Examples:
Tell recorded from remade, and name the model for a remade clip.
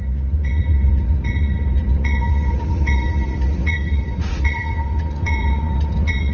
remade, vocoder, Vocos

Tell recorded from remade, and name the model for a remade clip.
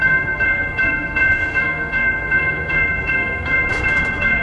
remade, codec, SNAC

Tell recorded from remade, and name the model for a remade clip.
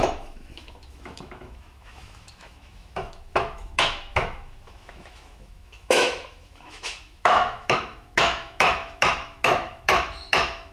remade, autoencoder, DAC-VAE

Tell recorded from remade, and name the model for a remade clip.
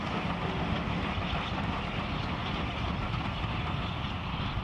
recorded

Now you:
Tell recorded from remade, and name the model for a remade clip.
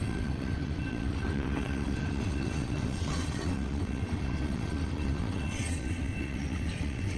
remade, vocoder, WaveNeXt